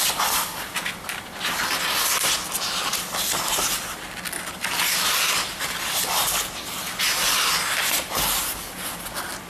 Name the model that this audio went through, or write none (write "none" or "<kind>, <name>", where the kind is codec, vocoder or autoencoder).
none